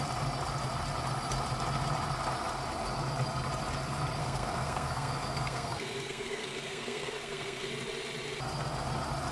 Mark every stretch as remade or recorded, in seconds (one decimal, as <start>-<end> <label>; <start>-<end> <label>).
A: 0.0-4.2 recorded; 4.2-7.7 remade; 7.7-9.3 recorded